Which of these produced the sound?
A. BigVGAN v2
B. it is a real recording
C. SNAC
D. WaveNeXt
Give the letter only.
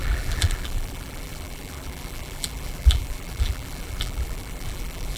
A